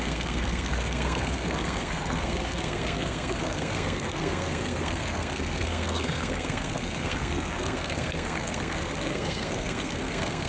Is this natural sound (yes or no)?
no